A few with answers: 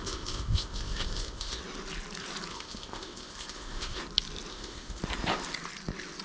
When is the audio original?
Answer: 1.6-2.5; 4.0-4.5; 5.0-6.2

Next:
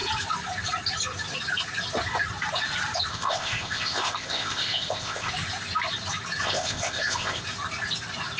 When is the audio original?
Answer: 0.0-3.1; 5.3-6.4; 7.4-8.4